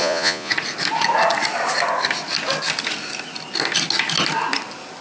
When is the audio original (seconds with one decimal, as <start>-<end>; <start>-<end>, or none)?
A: 0.5-5.0